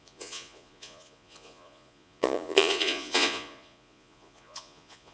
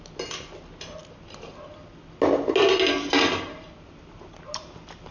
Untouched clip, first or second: second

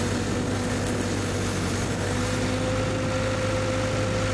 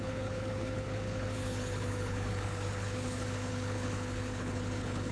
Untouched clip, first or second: first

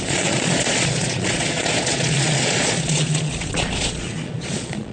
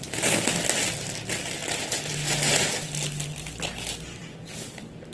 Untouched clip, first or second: second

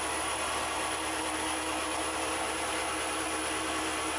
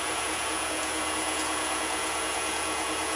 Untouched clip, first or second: first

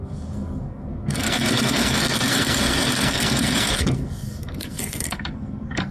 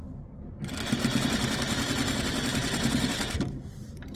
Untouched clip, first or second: second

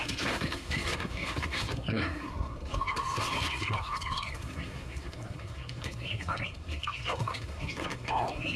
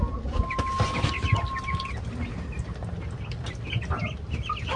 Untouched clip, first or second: second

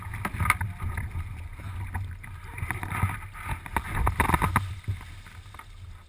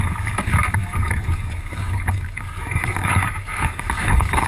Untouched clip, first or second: first